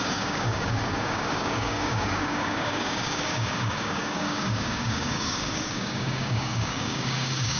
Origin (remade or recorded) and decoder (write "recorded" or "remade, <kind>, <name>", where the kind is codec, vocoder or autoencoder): remade, codec, DAC